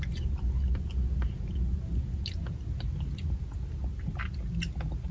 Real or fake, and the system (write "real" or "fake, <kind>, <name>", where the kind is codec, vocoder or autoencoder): real